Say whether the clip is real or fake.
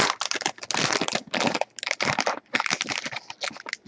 real